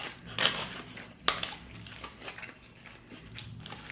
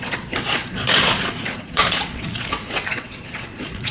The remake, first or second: second